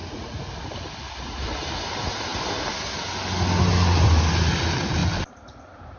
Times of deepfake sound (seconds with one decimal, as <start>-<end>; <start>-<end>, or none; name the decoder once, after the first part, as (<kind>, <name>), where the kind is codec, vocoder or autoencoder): 0.0-0.5 (vocoder, Vocos)

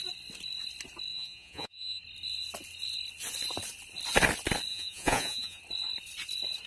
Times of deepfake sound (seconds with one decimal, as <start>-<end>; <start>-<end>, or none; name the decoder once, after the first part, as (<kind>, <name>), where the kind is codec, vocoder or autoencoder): 1.1-2.0 (vocoder, Vocos); 4.7-5.6

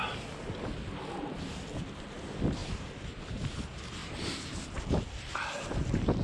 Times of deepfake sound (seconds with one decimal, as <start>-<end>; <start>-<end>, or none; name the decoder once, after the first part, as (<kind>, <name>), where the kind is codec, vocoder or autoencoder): 2.6-3.2 (vocoder, BigVGAN v2); 4.0-4.8

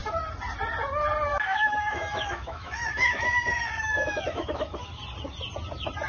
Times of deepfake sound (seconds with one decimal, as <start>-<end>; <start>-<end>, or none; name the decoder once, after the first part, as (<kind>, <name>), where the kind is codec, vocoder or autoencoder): 1.3-5.0 (autoencoder, DAC-VAE)

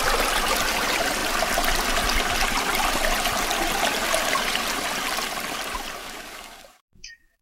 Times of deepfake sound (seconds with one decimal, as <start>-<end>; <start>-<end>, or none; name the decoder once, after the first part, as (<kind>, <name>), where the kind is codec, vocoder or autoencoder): 6.0-7.4 (codec, DAC)